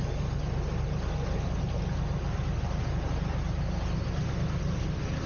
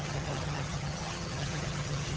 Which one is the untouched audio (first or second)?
first